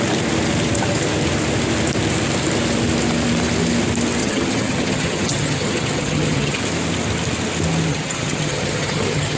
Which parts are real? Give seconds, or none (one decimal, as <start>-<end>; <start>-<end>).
0.0-4.2; 6.6-7.9